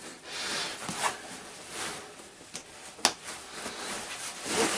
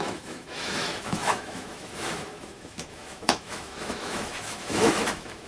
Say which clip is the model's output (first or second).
second